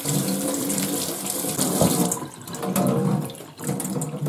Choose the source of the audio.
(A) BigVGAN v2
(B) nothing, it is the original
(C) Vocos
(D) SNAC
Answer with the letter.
A